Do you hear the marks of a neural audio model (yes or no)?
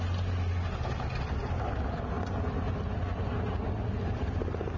no